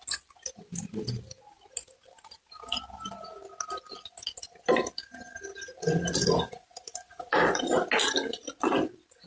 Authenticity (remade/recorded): recorded